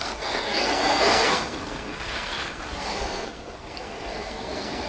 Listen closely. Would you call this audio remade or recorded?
remade